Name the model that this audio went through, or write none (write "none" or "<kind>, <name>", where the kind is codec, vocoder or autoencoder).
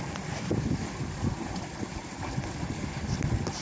none